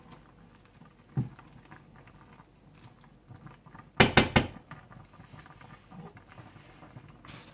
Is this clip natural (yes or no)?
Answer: yes